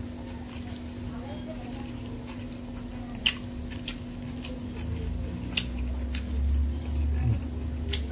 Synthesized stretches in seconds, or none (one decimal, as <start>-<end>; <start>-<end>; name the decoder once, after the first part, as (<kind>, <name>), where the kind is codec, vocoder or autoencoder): none